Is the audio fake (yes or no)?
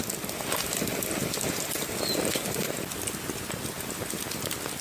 no